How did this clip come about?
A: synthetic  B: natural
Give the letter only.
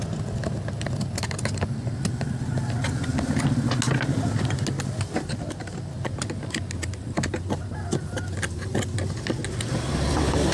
B